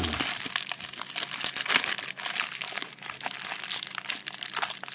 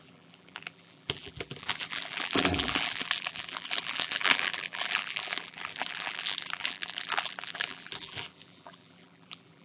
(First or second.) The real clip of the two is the first